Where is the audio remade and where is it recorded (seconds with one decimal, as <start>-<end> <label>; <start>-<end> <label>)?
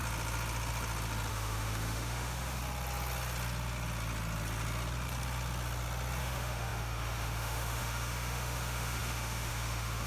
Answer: 0.0-1.3 recorded; 1.3-2.6 remade; 2.6-6.2 recorded; 6.2-10.1 remade